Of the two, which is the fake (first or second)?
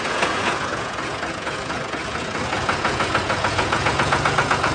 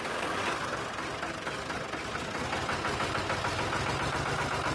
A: first